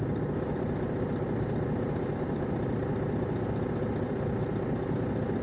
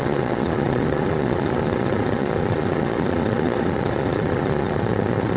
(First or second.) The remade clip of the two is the second